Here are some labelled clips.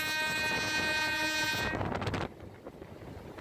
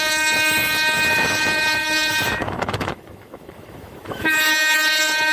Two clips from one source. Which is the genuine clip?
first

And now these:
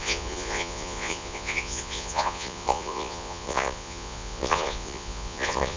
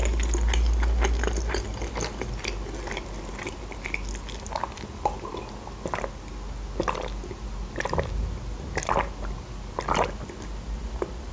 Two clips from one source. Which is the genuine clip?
second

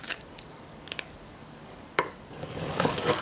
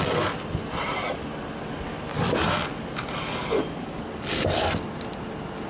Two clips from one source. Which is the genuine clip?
second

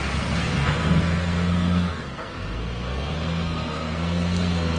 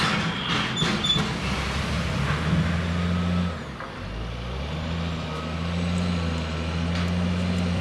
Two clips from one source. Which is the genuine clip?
second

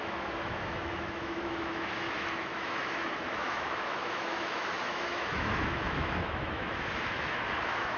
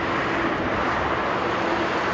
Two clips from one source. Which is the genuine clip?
second